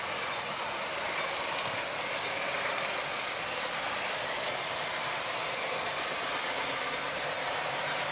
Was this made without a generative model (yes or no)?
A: yes